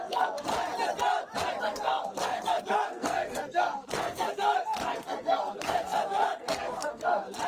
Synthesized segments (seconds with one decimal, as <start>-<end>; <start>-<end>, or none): 0.0-0.5; 1.6-7.5